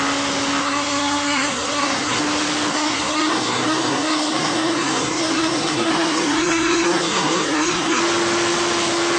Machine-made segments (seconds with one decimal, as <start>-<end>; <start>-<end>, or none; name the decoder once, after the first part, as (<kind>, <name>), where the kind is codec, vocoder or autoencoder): 0.6-2.2 (codec, SNAC); 2.7-8.0